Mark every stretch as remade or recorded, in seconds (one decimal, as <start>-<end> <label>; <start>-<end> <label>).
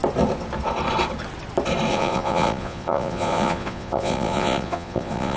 0.0-1.9 recorded; 1.9-5.4 remade